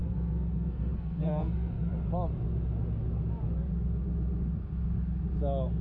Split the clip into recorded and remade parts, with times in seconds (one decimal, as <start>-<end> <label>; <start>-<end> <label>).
0.0-1.9 remade; 1.9-5.8 recorded